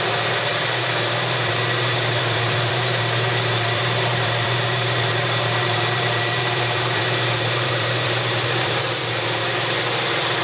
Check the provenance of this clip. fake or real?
fake